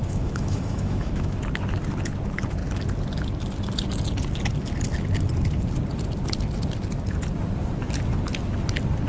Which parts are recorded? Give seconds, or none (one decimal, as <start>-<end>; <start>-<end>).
1.4-9.1